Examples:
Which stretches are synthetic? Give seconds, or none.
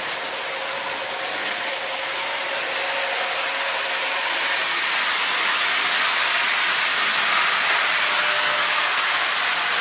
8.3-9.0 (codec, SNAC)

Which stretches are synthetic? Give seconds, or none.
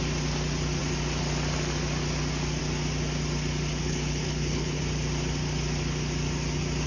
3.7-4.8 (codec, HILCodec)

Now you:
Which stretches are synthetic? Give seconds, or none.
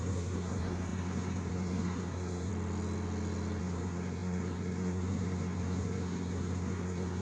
0.0-2.5 (codec, SNAC); 3.6-7.2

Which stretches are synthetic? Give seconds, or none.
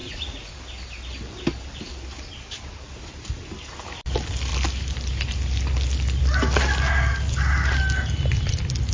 0.0-0.5 (vocoder, Vocos)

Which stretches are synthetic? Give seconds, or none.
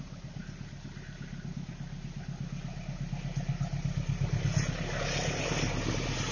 none